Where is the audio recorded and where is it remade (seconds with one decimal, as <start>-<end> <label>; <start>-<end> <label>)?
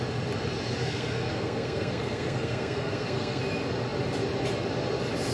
0.0-0.8 recorded; 0.8-3.4 remade; 3.4-5.3 recorded